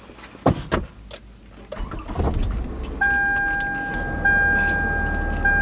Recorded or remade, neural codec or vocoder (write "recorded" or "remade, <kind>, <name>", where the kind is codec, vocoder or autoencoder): recorded